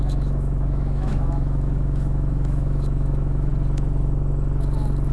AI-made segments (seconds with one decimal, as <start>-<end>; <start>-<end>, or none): 0.0-3.5